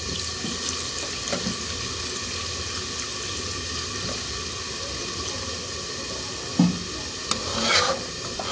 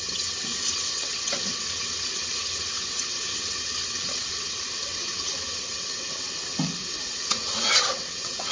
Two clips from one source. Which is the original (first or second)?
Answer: first